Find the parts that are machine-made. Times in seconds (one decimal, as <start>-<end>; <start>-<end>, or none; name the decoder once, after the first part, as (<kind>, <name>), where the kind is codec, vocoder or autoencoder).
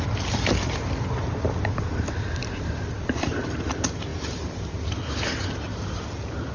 none